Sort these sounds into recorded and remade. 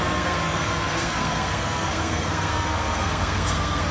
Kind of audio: remade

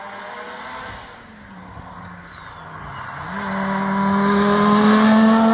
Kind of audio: recorded